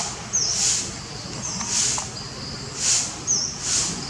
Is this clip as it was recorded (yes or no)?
yes